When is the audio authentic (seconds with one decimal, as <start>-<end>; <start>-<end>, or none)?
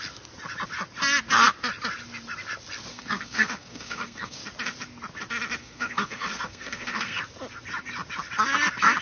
0.0-2.9; 4.4-5.6; 7.2-9.0